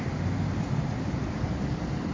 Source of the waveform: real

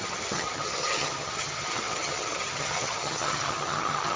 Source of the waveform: fake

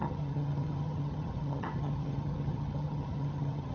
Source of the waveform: fake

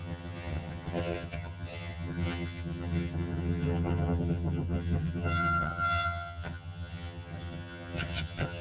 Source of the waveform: fake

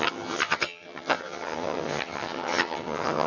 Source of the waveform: fake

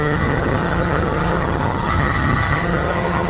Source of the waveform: fake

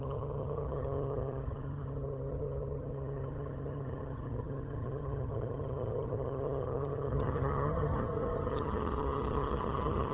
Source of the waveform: fake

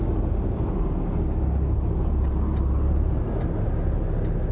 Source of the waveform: real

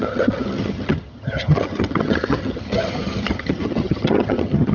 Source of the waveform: fake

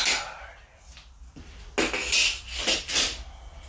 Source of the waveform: real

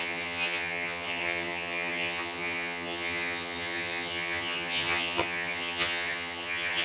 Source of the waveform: fake